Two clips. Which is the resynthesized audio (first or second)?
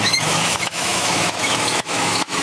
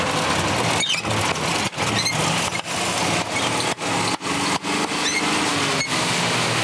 first